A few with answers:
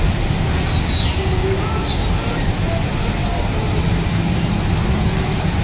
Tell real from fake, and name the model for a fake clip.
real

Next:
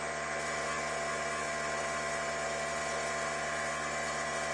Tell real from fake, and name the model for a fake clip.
real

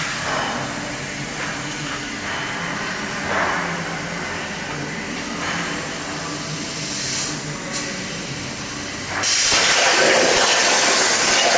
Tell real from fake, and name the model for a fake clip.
real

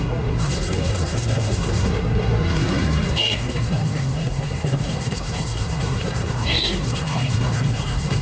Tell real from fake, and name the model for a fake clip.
fake, codec, SNAC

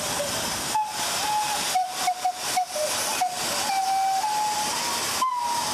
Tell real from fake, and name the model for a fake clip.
real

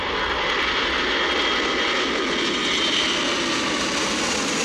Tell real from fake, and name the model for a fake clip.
real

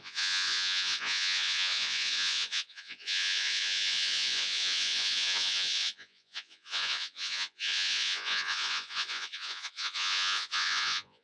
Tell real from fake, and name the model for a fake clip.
fake, vocoder, Vocos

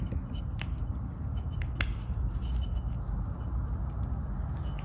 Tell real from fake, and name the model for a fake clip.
real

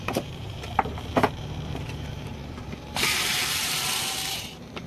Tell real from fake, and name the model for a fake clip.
fake, vocoder, BigVGAN v2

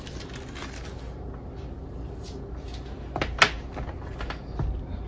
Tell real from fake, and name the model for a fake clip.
real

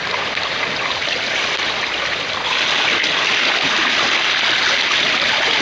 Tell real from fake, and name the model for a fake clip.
real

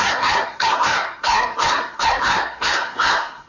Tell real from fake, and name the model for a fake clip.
fake, codec, SNAC